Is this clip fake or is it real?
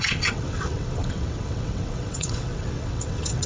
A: fake